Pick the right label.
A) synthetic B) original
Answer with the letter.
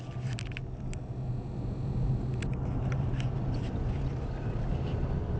B